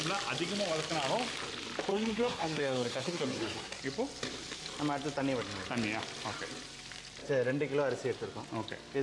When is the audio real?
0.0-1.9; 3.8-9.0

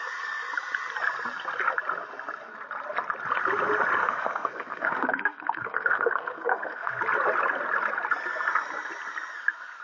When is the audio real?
0.0-4.0; 7.0-9.8

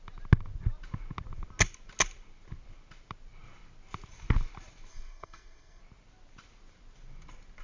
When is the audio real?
0.0-4.9; 5.8-7.6

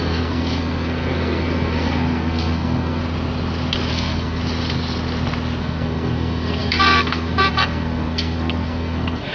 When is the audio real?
3.0-3.9; 4.4-5.6

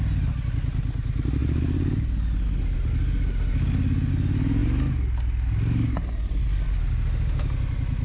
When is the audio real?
0.0-8.0

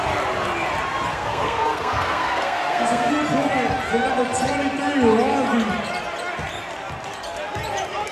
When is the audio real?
0.0-1.1; 3.1-8.1

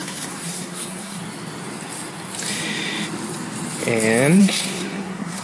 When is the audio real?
1.2-4.4

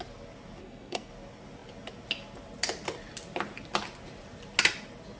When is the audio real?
0.0-0.6; 1.1-5.2